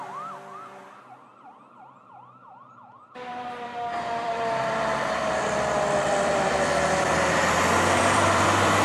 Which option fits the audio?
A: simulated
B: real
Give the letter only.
A